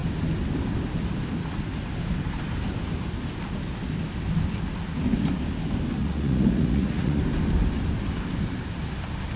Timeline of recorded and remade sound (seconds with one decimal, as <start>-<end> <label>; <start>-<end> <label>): 0.0-6.0 recorded; 6.0-7.2 remade; 7.2-9.4 recorded